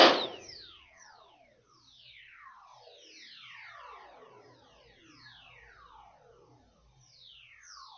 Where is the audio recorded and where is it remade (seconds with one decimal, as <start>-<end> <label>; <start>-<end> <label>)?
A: 0.0-1.3 remade; 1.3-8.0 recorded